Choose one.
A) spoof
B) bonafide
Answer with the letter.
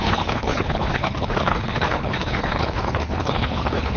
A